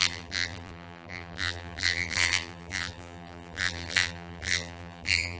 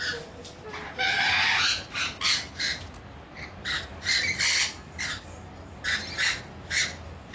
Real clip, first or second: second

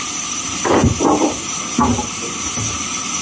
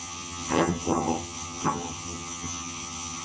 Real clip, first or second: first